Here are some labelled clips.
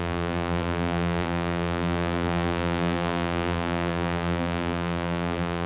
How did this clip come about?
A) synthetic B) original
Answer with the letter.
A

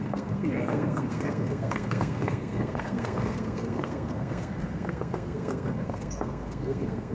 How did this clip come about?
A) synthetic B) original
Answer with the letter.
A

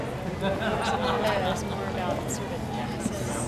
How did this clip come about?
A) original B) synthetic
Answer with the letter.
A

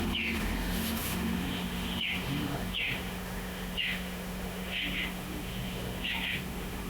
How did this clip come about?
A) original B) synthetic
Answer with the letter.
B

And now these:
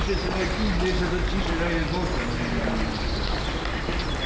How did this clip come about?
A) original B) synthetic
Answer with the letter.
A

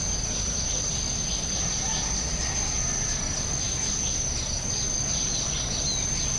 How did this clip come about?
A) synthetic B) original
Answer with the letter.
B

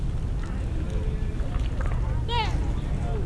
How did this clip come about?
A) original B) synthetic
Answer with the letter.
A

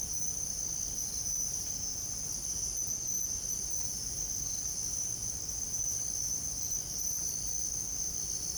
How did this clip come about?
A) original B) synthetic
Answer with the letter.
A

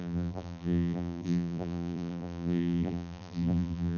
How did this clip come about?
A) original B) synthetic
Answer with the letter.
B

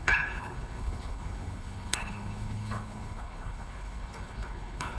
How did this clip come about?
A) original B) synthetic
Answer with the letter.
B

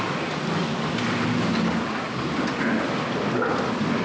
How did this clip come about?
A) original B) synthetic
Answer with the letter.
A